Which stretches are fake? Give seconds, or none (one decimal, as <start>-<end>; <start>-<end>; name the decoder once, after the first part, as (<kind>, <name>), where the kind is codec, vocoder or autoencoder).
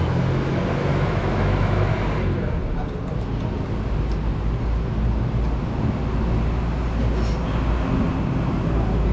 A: 0.9-1.9 (autoencoder, DAC-VAE)